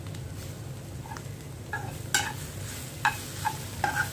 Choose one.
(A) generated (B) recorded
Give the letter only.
B